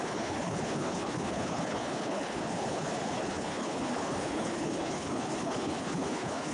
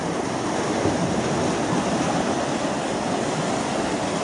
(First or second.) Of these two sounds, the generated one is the first